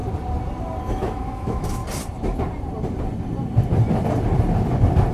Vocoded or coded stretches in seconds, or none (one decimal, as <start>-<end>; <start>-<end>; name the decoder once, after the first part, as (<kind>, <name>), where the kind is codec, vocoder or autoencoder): 0.9-1.8 (autoencoder, DAC-VAE)